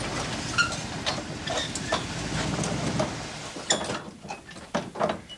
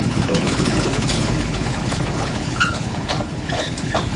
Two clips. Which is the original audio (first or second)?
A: first